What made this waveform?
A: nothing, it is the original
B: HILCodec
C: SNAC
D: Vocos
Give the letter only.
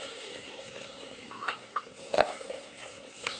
C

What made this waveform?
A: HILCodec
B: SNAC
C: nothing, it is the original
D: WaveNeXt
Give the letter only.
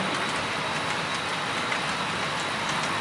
C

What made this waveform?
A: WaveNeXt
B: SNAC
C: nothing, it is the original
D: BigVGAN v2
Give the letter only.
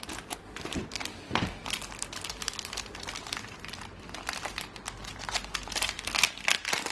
C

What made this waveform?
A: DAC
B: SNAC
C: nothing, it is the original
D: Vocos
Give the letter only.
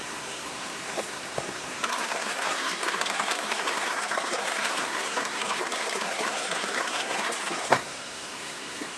B